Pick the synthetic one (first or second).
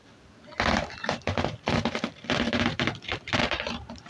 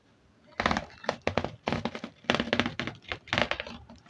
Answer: first